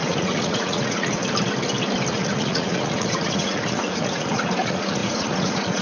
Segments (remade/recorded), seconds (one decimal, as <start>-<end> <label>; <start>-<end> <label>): 0.0-1.2 remade; 1.2-2.1 recorded; 2.1-5.8 remade